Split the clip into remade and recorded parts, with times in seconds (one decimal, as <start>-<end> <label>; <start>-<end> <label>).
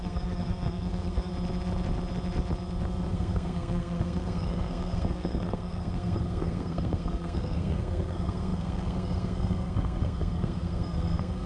0.0-1.3 remade; 1.3-3.1 recorded; 3.1-11.5 remade